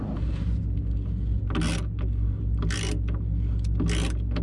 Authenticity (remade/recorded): recorded